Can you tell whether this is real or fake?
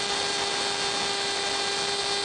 real